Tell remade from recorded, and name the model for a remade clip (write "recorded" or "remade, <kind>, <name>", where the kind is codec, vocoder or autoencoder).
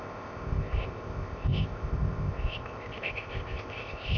remade, codec, ZipCodec